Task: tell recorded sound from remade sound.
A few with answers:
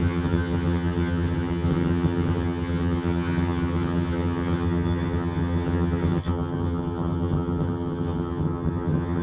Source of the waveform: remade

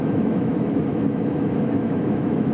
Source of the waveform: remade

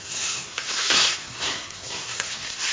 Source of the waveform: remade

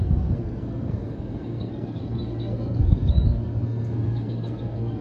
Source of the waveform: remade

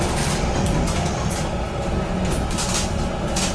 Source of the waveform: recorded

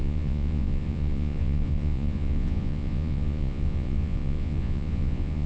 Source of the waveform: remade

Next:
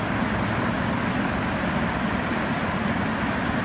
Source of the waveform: recorded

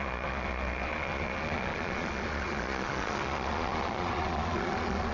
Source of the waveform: remade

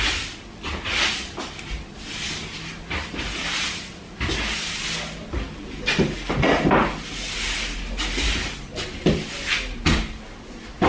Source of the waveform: recorded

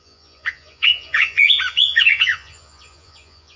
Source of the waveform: remade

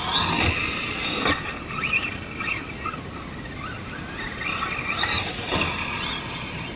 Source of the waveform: recorded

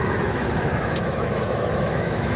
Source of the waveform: remade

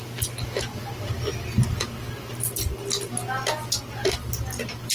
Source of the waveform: recorded